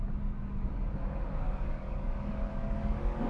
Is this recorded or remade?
remade